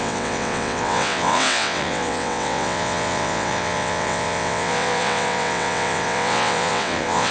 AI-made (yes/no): yes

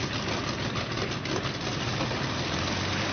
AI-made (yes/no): no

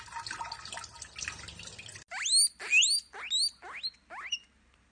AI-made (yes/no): no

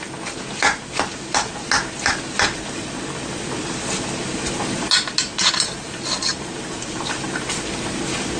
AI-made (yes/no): no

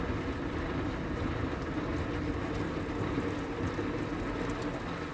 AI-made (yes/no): no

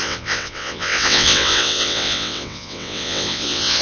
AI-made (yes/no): yes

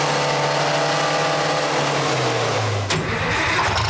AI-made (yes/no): no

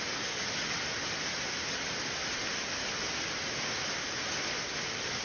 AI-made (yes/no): no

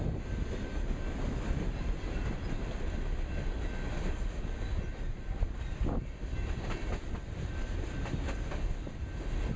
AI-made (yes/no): no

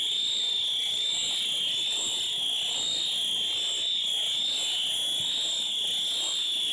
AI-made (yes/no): no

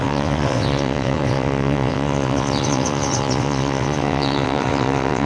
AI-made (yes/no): yes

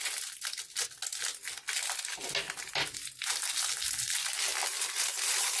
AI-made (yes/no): no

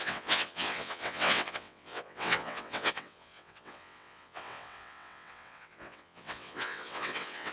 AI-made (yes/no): yes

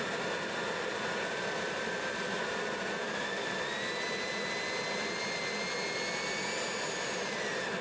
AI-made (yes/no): no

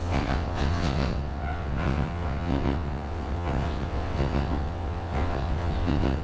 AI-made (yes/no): yes